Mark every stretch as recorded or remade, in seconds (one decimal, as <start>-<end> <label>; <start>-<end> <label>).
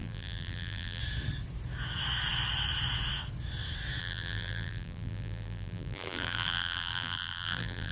0.0-1.0 remade; 1.0-4.0 recorded; 4.0-7.9 remade